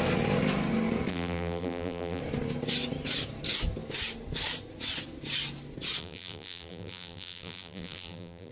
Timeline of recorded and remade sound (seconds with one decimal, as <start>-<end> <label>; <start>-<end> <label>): 0.0-1.1 recorded; 1.1-2.2 remade; 2.2-6.0 recorded; 6.0-8.5 remade